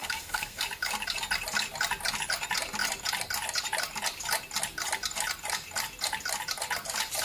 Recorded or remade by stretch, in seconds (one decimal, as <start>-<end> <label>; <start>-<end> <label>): 0.0-0.6 remade; 0.6-7.2 recorded